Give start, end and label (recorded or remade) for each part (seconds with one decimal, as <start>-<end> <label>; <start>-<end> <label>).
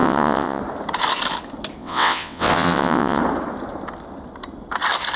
0.0-0.6 remade; 0.6-1.8 recorded; 1.8-3.2 remade; 3.2-5.2 recorded